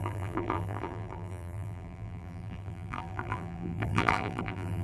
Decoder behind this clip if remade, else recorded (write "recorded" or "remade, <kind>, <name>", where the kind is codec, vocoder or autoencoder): remade, vocoder, BigVGAN v2